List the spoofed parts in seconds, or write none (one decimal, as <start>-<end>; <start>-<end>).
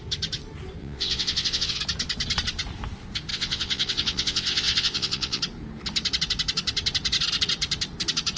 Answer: 0.8-1.8; 3.3-5.4